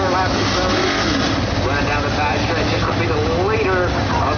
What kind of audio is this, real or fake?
real